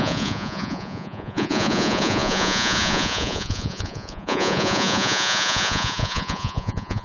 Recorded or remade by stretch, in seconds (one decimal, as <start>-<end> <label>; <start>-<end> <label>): 0.0-7.0 remade